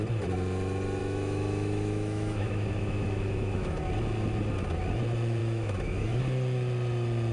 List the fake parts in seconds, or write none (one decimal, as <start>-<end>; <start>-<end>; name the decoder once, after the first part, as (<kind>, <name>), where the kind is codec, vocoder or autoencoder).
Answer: 1.0-3.8 (autoencoder, DAC-VAE); 5.4-6.2